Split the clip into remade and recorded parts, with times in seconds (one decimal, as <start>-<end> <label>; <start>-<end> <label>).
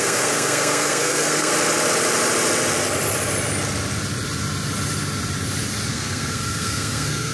0.0-1.5 remade; 1.5-5.9 recorded; 5.9-7.3 remade